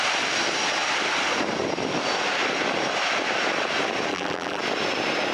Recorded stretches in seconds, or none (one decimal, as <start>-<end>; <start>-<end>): 0.0-4.1; 4.6-5.3